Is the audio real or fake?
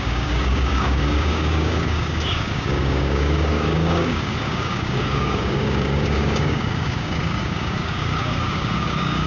fake